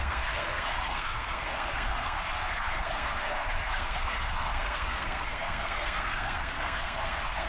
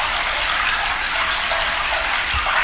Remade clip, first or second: first